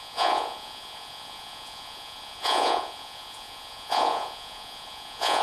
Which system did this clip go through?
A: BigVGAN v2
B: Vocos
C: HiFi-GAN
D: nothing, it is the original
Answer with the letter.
B